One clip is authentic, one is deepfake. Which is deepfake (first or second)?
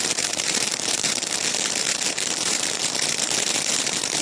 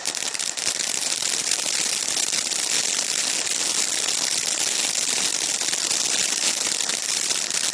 first